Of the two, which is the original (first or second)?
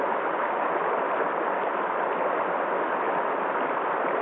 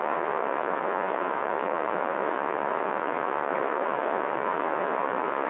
first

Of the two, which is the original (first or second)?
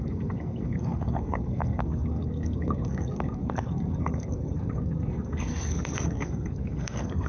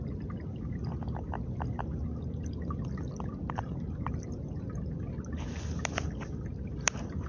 second